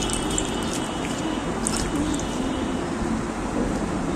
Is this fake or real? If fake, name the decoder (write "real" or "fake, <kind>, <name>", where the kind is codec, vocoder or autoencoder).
real